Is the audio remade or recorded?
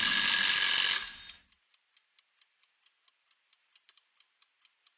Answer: recorded